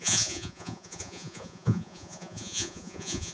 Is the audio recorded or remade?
remade